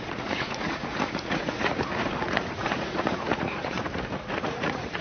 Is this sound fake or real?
fake